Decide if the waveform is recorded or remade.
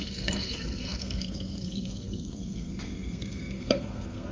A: remade